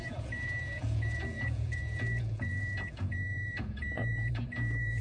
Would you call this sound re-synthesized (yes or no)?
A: yes